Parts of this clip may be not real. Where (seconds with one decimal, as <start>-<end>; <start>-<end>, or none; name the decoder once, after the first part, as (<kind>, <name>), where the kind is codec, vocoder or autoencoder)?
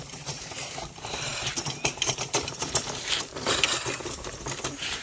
none